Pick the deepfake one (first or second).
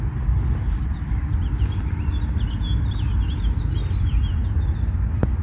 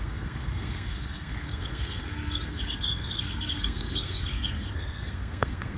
second